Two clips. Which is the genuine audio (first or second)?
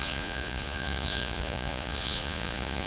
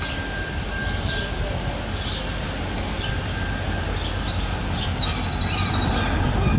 second